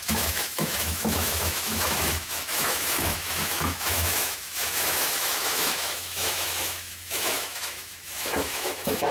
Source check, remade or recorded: remade